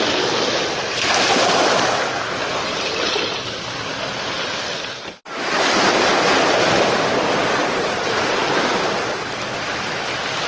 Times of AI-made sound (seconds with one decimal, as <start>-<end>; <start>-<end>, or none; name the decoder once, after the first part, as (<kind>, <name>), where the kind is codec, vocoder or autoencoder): 7.6-8.3 (vocoder, Vocos)